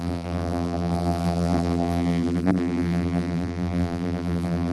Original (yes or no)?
no